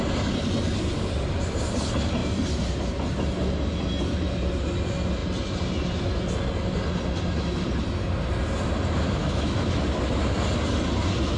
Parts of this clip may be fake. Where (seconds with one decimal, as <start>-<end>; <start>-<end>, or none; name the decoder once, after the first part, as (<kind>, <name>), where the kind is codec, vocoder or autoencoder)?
9.2-9.8 (autoencoder, DAC-VAE)